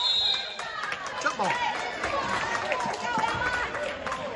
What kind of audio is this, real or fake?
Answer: real